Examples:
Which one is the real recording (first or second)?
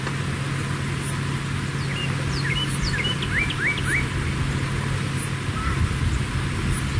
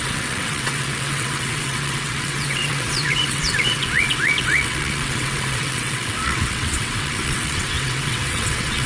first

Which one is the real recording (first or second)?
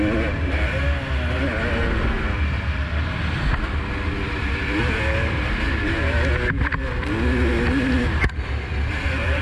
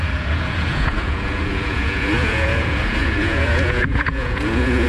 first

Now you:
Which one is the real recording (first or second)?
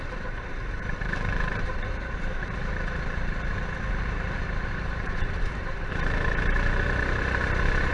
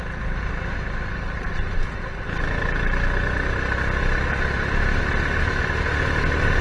second